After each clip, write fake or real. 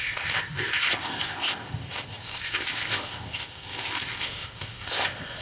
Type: fake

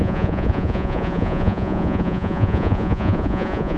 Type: fake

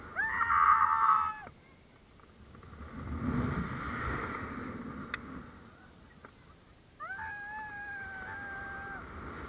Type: real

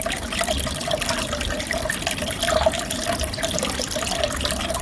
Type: real